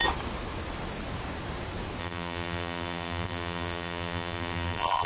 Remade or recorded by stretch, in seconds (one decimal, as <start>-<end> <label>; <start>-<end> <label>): 0.0-2.0 recorded; 2.0-5.1 remade